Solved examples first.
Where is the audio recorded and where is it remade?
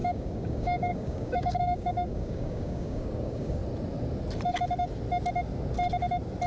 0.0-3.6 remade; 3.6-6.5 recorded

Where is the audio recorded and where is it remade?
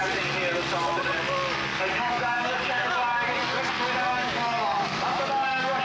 0.0-1.7 recorded; 1.7-2.9 remade; 2.9-4.1 recorded; 4.1-5.8 remade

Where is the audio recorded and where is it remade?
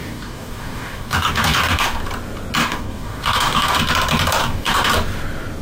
0.0-2.0 remade; 2.0-2.6 recorded; 2.6-3.8 remade; 3.8-4.4 recorded; 4.4-4.9 remade; 4.9-5.6 recorded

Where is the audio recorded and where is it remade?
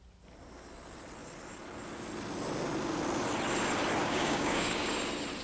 0.0-4.0 recorded; 4.0-4.9 remade; 4.9-5.4 recorded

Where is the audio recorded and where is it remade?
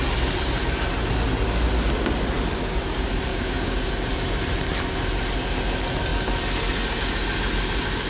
0.0-3.3 recorded; 3.3-3.9 remade; 3.9-8.1 recorded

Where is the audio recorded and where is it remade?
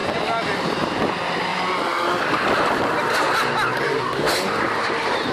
0.0-3.7 recorded; 3.7-4.3 remade; 4.3-5.3 recorded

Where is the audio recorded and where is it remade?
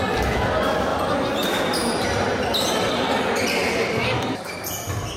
0.0-3.6 recorded; 3.6-4.5 remade; 4.5-5.2 recorded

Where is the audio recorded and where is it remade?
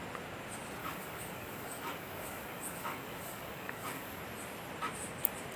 0.0-0.8 recorded; 0.8-4.2 remade; 4.2-5.6 recorded